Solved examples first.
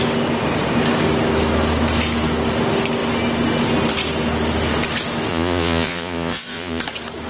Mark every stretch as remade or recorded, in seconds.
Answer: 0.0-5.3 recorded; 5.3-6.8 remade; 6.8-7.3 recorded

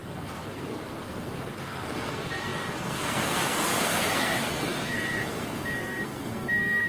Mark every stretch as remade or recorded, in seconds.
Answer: 0.0-6.9 remade

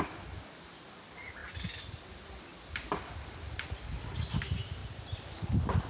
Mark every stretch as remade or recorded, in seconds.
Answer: 0.0-1.4 recorded; 1.4-2.0 remade; 2.0-2.9 recorded; 2.9-3.7 remade; 3.7-4.8 recorded; 4.8-5.3 remade; 5.3-5.9 recorded